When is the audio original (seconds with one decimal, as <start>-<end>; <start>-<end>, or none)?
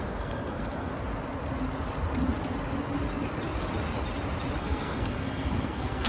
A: 0.9-4.6